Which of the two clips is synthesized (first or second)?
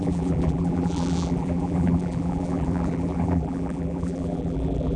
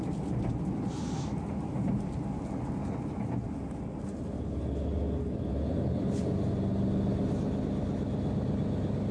first